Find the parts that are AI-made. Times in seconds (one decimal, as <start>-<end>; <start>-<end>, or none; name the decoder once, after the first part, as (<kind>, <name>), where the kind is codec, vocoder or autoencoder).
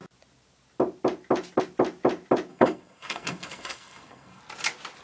2.5-4.4 (codec, SNAC)